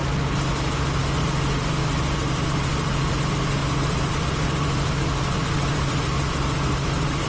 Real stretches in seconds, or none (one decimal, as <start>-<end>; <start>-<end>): 0.0-1.8; 3.1-3.6